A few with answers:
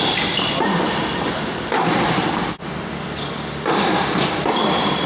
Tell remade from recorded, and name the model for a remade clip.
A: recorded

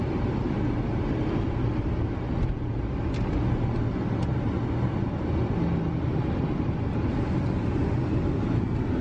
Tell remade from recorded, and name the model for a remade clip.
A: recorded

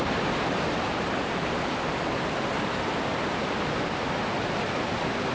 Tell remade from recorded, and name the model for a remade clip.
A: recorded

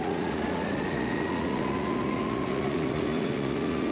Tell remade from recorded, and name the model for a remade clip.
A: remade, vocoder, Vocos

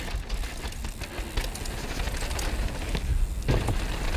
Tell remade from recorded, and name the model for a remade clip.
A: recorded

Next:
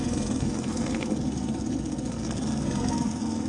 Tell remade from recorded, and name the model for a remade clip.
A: remade, codec, SNAC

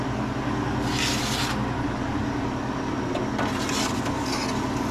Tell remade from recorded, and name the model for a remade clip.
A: recorded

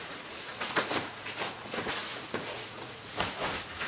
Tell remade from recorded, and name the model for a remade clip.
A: remade, vocoder, Vocos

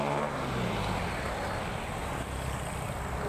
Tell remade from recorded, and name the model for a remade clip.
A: recorded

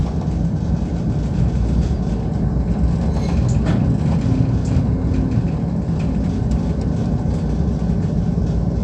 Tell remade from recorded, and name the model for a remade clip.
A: recorded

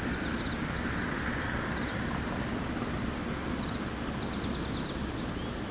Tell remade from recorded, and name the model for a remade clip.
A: recorded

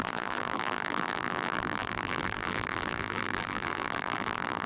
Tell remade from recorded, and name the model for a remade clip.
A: remade, vocoder, BigVGAN v2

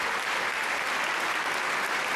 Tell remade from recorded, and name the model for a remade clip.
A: recorded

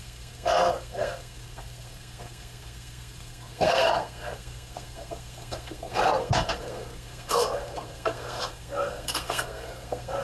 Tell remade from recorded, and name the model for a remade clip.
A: remade, codec, SNAC